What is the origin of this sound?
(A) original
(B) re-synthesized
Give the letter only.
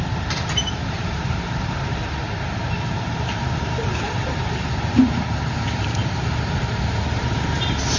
B